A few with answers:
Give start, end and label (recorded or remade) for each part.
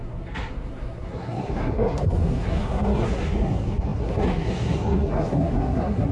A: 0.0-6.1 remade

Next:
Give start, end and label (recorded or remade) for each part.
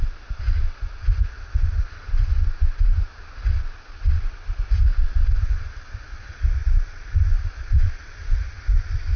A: 0.0-9.2 recorded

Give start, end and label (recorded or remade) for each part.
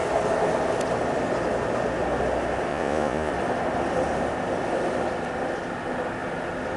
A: 0.0-2.7 recorded; 2.7-3.3 remade; 3.3-6.8 recorded